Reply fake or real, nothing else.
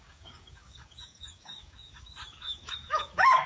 fake